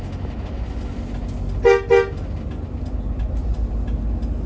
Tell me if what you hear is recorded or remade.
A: recorded